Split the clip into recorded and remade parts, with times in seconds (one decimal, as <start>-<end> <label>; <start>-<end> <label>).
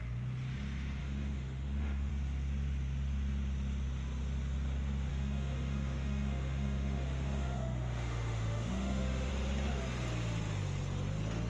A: 0.0-1.0 recorded; 1.0-2.1 remade; 2.1-5.1 recorded; 5.1-9.3 remade; 9.3-11.5 recorded